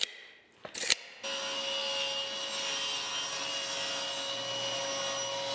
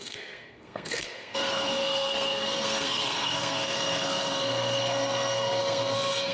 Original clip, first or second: first